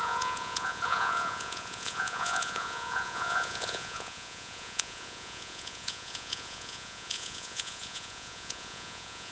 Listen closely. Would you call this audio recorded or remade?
remade